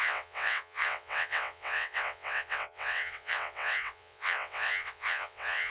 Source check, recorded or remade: remade